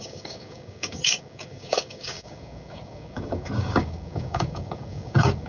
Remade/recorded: remade